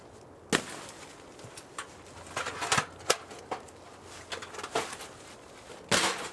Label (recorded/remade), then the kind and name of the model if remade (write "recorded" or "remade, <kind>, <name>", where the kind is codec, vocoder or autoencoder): recorded